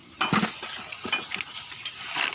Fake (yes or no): no